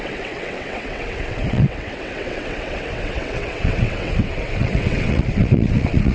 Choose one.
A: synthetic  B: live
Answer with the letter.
A